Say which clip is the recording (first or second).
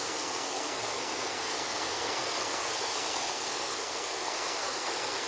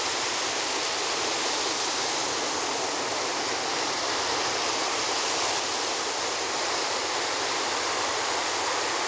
second